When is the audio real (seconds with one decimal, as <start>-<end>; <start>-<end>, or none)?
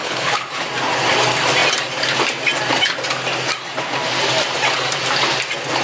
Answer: 0.5-5.8